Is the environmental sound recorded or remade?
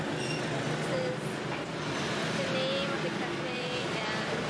recorded